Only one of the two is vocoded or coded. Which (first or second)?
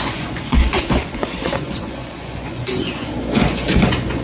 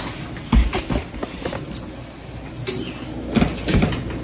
first